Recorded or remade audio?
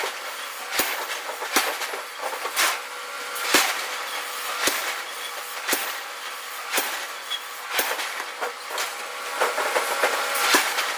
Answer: remade